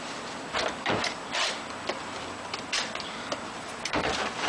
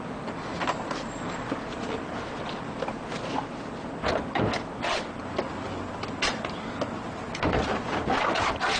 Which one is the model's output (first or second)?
first